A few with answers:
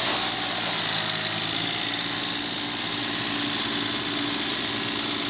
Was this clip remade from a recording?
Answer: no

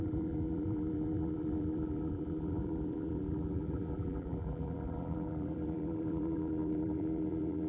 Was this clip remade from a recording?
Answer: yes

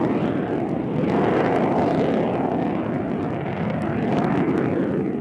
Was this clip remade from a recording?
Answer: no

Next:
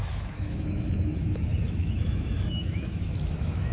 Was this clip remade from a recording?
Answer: yes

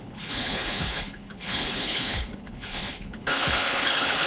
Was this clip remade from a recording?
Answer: yes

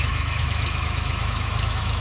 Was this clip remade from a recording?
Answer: yes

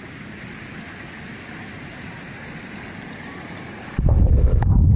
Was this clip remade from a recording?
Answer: no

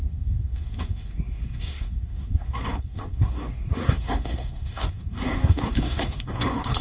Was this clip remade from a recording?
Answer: yes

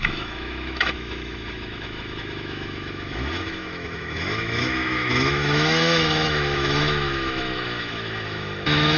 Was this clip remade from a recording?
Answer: yes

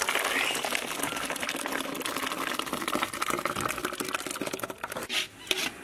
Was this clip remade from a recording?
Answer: no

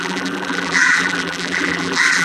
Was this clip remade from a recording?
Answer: yes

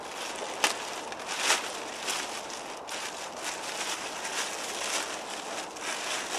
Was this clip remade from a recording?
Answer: no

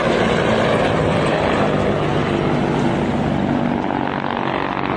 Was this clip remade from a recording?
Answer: no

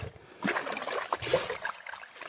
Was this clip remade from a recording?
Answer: no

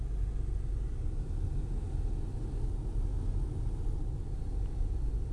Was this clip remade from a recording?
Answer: no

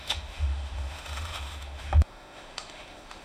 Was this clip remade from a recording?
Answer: yes